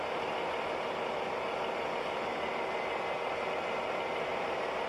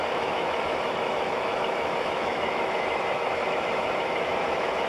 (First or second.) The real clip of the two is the first